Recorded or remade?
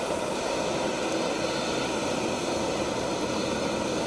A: recorded